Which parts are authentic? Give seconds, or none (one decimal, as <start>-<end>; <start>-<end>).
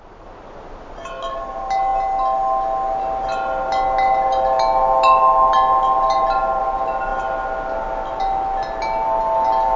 0.0-9.8